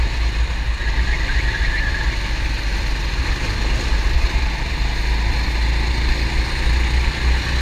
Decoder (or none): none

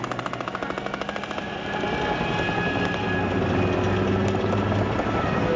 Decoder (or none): none